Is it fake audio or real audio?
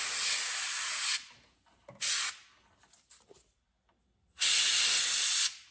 real